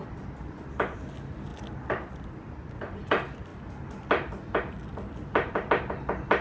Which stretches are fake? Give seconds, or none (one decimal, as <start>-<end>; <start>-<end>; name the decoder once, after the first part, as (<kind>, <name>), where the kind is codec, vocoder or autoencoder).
none